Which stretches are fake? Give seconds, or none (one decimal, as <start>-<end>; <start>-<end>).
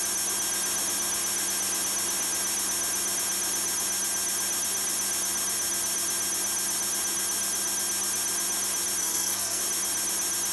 9.0-9.6